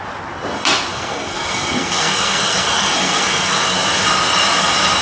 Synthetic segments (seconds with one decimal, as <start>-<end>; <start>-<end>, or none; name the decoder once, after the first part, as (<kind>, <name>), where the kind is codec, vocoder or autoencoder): 0.9-3.6 (codec, SNAC)